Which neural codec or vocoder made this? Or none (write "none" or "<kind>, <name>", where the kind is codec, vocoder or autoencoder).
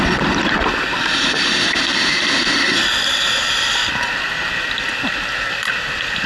none